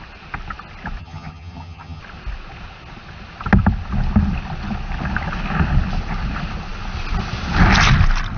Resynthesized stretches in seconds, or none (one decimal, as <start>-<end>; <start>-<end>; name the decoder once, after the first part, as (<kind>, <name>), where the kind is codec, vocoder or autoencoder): 1.0-2.0 (vocoder, HiFi-GAN)